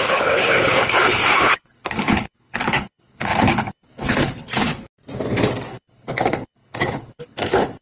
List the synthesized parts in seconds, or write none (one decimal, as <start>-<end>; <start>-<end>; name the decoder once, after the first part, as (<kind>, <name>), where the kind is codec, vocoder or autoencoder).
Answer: 0.0-4.7 (codec, HILCodec); 5.7-7.8